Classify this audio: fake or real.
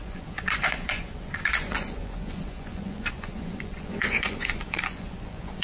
fake